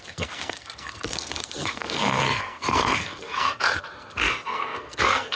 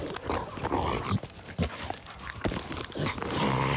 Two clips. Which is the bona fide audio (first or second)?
second